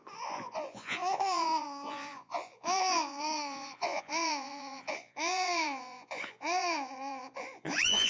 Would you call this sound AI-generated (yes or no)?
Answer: yes